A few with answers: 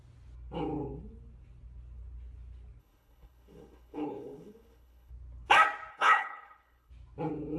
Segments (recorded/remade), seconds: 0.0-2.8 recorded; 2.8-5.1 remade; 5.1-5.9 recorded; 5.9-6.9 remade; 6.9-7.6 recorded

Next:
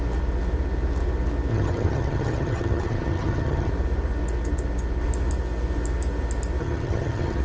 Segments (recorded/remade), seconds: 0.0-1.5 recorded; 1.5-3.7 remade; 3.7-6.6 recorded; 6.6-7.4 remade

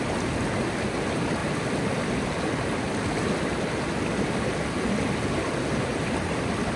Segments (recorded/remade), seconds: 0.0-5.9 recorded; 5.9-6.8 remade

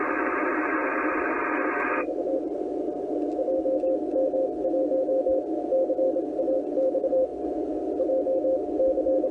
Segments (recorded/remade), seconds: 0.0-3.3 remade; 3.3-6.6 recorded; 6.6-7.3 remade; 7.3-9.3 recorded